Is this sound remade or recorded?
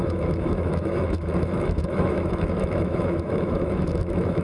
remade